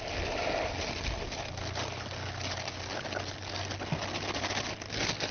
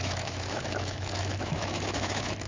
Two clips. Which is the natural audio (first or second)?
first